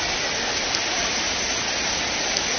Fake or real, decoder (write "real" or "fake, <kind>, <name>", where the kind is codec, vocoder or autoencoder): real